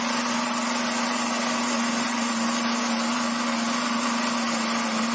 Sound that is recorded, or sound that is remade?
recorded